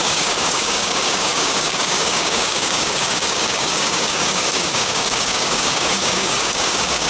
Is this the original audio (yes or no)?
no